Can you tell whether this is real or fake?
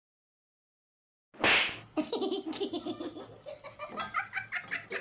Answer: real